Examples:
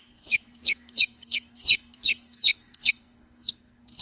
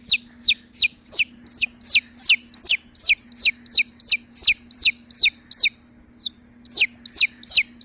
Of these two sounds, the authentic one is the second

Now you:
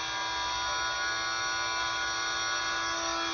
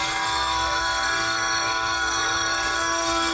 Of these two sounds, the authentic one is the first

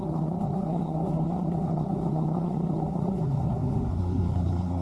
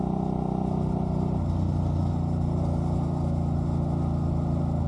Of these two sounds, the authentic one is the second